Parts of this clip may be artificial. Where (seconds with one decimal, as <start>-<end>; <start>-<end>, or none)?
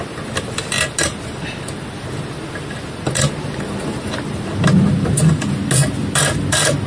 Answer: none